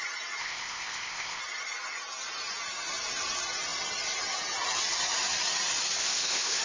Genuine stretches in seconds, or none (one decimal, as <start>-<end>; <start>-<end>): 0.0-0.4; 1.4-6.0